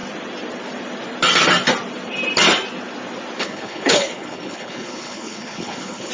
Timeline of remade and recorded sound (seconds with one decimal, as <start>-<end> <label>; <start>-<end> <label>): 0.0-3.4 recorded; 3.4-6.1 remade